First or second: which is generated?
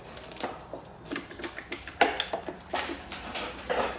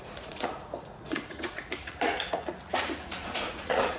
second